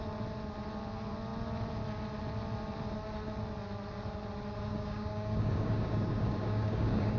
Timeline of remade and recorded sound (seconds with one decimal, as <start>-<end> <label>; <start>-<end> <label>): 0.0-4.7 recorded; 4.7-7.2 remade